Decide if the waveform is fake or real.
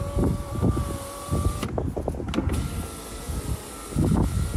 real